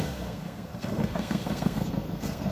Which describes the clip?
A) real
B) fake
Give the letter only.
B